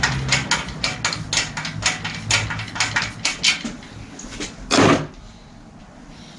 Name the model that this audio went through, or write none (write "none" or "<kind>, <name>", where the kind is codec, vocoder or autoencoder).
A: none